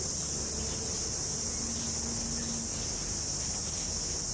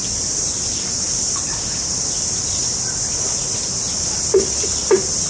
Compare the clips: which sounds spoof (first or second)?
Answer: second